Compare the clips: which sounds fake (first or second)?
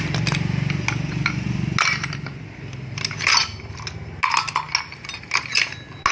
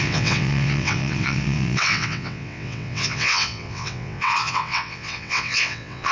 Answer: second